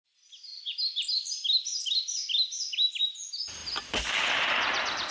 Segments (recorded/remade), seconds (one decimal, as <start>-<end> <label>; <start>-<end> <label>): 0.0-5.1 recorded